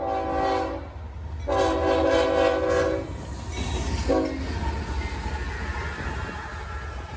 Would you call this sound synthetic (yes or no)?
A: no